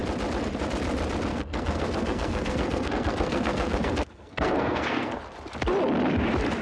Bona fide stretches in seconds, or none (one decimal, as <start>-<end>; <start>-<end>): 0.0-1.3; 5.2-6.6